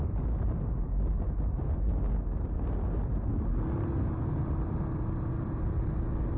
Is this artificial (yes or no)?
no